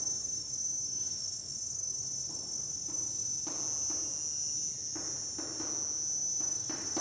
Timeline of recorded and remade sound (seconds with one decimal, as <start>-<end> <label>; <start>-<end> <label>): 0.0-1.2 recorded; 1.2-1.9 remade; 1.9-7.0 recorded